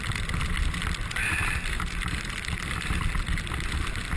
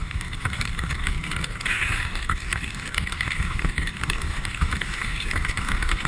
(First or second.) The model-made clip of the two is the second